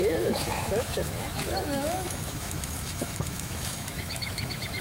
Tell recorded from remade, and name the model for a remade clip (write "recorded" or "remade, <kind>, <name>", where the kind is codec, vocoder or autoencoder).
remade, autoencoder, DAC-VAE